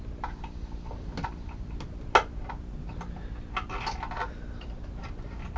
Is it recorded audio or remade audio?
recorded